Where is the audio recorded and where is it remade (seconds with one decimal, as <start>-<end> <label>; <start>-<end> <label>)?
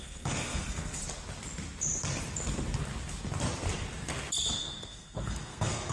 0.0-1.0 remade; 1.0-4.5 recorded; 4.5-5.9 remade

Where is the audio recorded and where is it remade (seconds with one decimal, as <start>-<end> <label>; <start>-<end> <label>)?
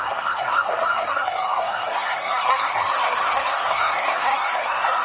0.0-5.0 remade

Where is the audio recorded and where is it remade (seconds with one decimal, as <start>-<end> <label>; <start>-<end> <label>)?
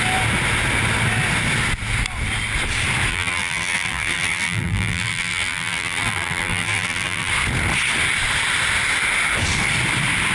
0.0-3.1 recorded; 3.1-7.3 remade; 7.3-10.3 recorded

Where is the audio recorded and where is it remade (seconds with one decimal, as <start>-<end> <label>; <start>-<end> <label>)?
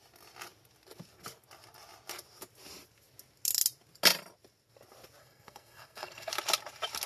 0.0-5.2 recorded; 5.2-6.3 remade; 6.3-7.1 recorded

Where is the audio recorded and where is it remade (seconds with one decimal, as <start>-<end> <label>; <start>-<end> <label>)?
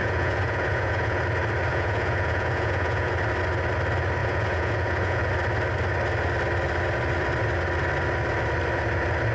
0.0-1.2 remade; 1.2-1.7 recorded; 1.7-3.1 remade; 3.1-4.2 recorded; 4.2-5.3 remade; 5.3-9.3 recorded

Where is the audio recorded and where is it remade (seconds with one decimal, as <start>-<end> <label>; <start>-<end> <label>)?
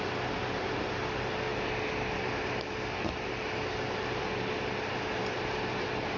0.0-6.2 recorded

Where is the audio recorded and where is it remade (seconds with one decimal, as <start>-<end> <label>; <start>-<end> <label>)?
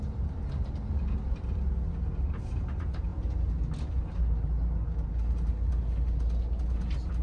0.0-7.2 recorded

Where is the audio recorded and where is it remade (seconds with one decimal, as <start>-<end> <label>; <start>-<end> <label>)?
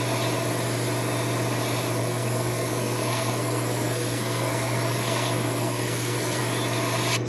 0.0-2.0 recorded; 2.0-6.4 remade; 6.4-7.3 recorded